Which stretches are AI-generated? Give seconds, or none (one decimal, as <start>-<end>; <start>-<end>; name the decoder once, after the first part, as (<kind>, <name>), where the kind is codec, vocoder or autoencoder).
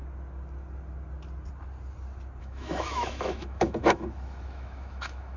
2.4-5.4 (autoencoder, DAC-VAE)